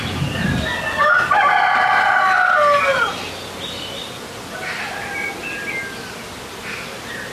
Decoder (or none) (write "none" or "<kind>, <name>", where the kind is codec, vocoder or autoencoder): none